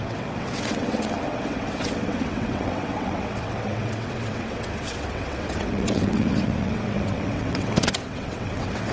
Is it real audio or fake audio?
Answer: fake